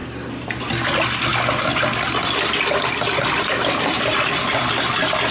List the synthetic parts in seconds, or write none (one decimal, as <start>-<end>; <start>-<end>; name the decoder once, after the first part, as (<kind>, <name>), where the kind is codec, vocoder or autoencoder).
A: none